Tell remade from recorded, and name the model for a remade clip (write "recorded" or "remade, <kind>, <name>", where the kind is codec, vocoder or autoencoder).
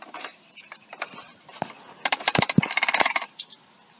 remade, vocoder, BigVGAN v2